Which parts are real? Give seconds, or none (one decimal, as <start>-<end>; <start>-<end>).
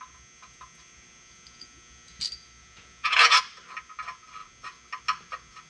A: 0.0-2.6; 3.4-5.7